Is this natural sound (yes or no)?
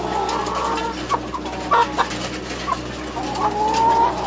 yes